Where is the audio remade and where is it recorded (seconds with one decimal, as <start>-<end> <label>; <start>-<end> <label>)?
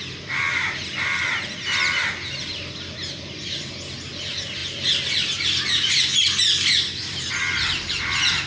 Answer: 0.0-4.6 recorded; 4.6-7.3 remade; 7.3-8.5 recorded